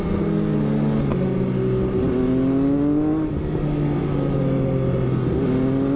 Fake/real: real